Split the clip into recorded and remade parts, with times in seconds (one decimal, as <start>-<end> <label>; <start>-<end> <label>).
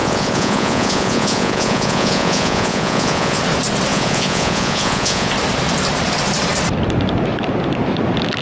0.0-3.4 remade; 3.4-3.9 recorded; 3.9-5.3 remade; 5.3-8.4 recorded